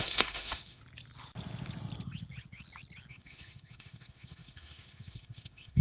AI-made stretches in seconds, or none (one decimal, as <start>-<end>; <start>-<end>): 0.0-0.8; 3.1-5.8